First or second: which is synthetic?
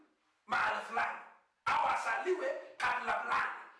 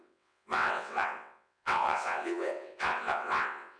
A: second